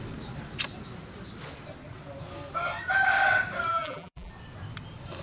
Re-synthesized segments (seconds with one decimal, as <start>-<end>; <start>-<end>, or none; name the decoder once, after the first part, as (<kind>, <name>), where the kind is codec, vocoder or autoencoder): 3.7-4.3 (vocoder, BigVGAN v2)